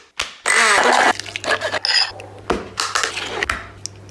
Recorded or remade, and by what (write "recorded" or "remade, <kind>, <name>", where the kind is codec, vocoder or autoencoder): recorded